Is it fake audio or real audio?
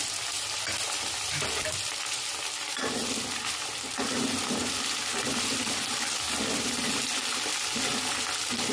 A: real